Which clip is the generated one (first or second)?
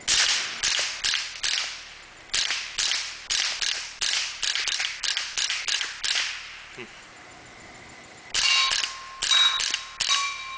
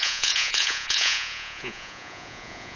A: second